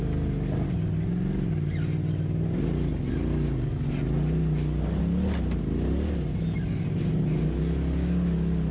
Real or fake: real